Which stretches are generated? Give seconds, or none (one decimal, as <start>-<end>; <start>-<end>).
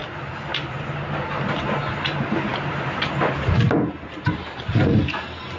2.5-3.1